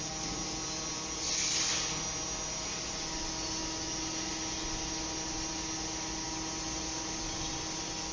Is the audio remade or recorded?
recorded